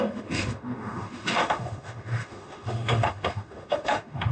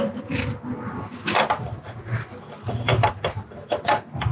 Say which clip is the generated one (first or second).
first